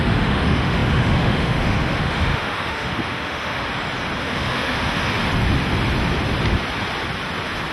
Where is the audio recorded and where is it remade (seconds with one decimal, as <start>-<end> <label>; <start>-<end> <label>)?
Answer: 0.0-3.6 remade; 3.6-4.2 recorded; 4.2-5.2 remade; 5.2-7.7 recorded